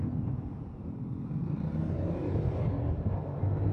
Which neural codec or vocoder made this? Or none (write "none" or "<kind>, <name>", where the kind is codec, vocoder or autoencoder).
none